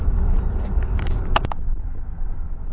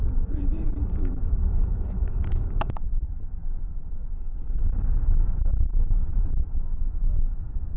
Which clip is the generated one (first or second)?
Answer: second